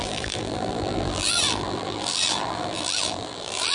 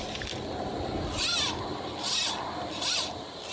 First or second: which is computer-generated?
first